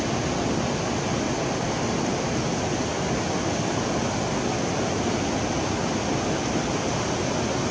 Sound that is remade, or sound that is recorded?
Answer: recorded